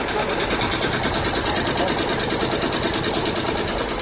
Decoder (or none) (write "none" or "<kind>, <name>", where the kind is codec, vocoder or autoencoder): none